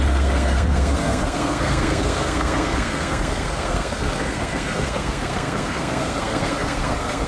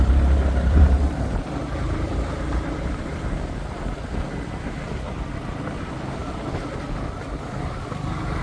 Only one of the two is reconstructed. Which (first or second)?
first